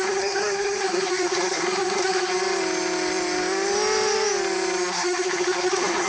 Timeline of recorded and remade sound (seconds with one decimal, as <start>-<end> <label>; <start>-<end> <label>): 0.0-2.3 remade; 2.3-4.9 recorded; 4.9-6.1 remade